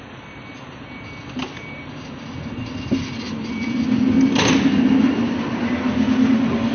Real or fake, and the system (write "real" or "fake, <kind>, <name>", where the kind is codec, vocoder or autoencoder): real